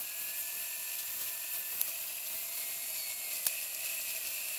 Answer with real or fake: real